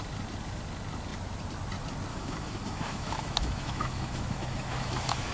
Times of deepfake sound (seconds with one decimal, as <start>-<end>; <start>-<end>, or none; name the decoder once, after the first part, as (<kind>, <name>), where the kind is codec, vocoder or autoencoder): 2.1-5.3 (autoencoder, DAC-VAE)